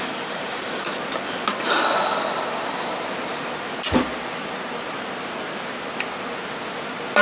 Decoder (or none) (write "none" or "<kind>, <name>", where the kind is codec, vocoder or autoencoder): none